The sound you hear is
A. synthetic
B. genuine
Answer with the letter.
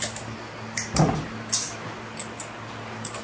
B